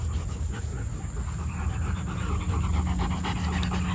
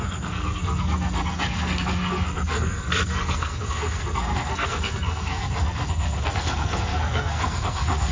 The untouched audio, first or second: first